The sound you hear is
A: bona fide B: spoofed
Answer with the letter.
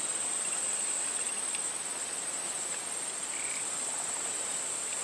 A